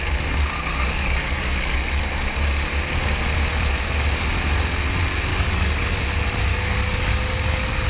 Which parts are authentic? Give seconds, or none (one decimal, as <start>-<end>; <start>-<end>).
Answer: 0.0-0.7; 2.0-5.3; 6.0-6.5